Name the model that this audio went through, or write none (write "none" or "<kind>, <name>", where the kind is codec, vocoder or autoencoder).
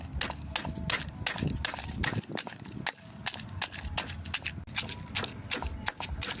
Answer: none